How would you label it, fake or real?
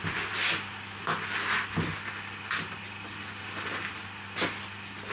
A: real